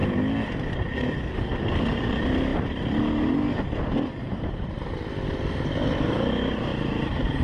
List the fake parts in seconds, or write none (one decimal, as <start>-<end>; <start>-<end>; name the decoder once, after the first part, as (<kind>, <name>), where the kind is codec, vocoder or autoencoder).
4.2-4.8 (vocoder, BigVGAN v2); 6.7-7.4